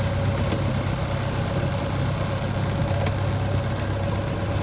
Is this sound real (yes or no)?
yes